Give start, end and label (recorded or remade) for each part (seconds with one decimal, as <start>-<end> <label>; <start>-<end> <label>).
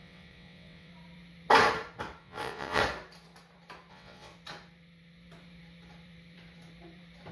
0.0-0.9 remade; 0.9-2.2 recorded; 2.2-2.8 remade; 2.8-3.9 recorded; 3.9-4.3 remade; 4.3-7.3 recorded